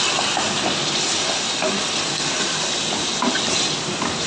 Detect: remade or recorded recorded